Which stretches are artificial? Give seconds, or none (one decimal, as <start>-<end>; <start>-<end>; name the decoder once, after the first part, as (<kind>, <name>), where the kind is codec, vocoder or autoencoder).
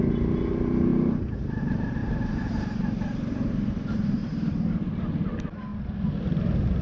0.9-1.6 (vocoder, BigVGAN v2); 2.0-4.5